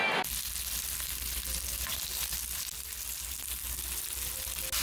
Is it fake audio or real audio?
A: real